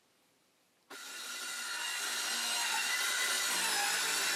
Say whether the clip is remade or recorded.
recorded